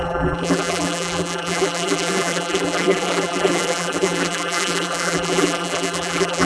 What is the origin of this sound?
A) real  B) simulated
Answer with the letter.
B